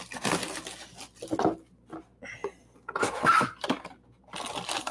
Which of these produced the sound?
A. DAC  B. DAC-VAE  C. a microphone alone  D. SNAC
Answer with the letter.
C